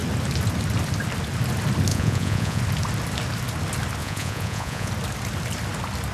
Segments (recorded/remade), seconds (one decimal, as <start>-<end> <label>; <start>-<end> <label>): 0.0-1.9 recorded; 1.9-2.6 remade; 2.6-4.0 recorded; 4.0-4.9 remade; 4.9-6.1 recorded